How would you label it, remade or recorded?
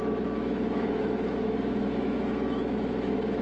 remade